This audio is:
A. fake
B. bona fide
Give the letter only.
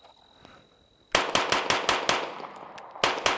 B